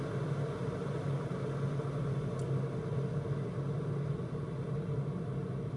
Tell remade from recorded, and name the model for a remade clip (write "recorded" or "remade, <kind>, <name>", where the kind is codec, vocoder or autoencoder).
recorded